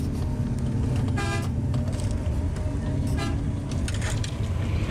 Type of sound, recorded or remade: recorded